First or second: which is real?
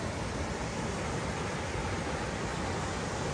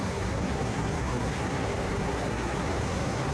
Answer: first